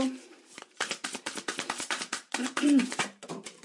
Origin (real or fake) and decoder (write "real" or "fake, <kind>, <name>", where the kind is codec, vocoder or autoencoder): fake, vocoder, BigVGAN v2